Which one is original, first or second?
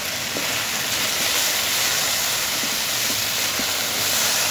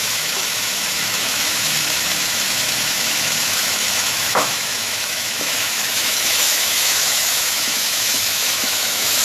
first